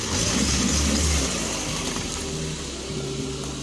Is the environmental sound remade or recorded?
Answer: recorded